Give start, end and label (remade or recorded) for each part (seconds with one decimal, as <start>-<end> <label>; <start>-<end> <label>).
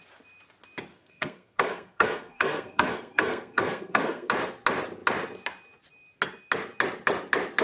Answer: 0.0-0.9 recorded; 0.9-4.3 remade; 4.3-7.6 recorded